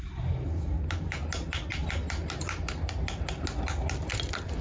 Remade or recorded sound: recorded